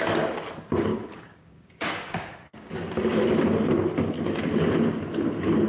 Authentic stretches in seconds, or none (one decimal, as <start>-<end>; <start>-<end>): 0.0-0.9; 2.7-5.7